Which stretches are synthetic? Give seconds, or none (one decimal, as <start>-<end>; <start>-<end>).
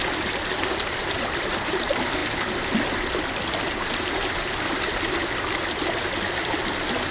none